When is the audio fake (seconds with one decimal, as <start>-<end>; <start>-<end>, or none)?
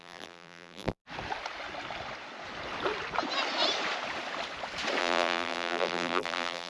0.0-1.0; 5.0-6.7